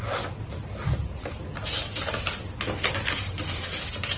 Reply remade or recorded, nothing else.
recorded